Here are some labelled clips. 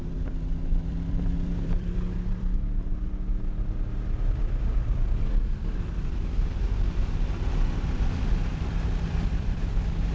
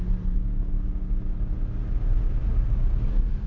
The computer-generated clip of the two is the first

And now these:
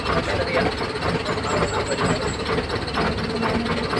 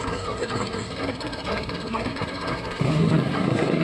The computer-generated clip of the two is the second